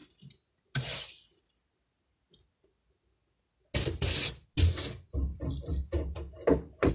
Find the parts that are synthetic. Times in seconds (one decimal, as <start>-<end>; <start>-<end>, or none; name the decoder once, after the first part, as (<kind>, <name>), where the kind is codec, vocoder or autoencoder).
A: none